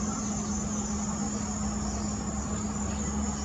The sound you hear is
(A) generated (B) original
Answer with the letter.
B